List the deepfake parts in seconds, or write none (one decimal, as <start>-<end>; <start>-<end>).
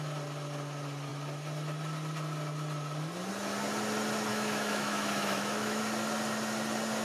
4.3-5.8